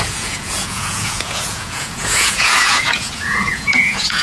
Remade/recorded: remade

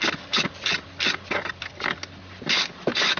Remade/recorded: recorded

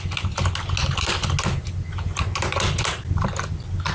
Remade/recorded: recorded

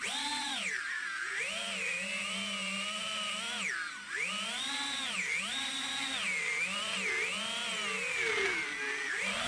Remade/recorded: recorded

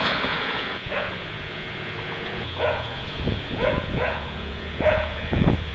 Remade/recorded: remade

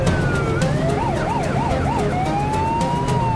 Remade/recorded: recorded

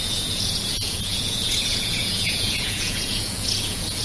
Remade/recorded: remade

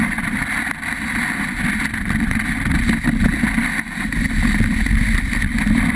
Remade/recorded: recorded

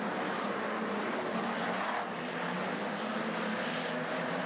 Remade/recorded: recorded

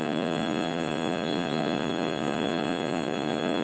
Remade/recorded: remade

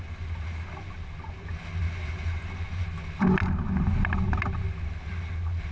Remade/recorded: recorded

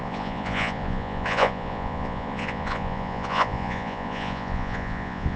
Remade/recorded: remade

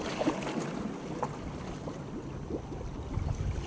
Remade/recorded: recorded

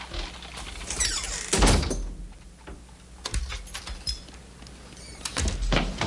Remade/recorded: recorded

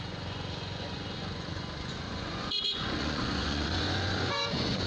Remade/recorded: remade